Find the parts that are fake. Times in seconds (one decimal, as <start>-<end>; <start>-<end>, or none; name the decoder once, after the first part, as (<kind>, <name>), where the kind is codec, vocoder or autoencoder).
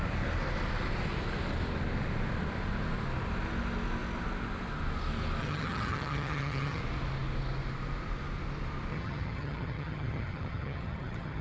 5.4-6.8 (vocoder, HiFi-GAN); 8.9-11.4